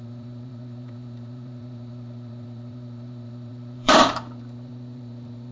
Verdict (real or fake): fake